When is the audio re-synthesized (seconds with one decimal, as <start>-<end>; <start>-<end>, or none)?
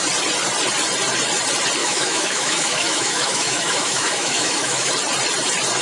1.8-4.9